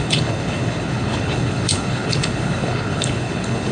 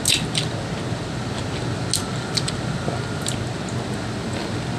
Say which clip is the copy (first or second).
first